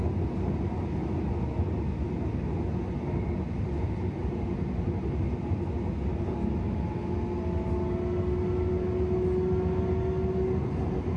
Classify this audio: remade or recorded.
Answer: recorded